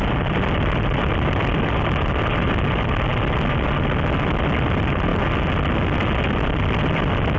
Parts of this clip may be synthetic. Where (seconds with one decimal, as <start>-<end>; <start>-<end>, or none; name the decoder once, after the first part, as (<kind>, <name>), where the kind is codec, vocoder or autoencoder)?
0.0-3.1 (vocoder, BigVGAN v2); 4.4-5.1; 6.6-7.4